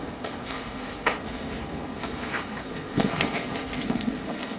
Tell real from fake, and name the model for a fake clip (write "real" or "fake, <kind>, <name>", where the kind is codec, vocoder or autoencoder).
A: fake, codec, SNAC